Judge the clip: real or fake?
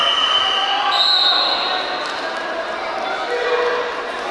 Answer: real